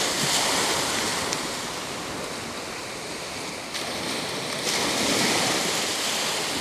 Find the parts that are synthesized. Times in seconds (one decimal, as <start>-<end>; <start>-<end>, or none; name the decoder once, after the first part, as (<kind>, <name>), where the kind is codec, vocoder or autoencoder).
none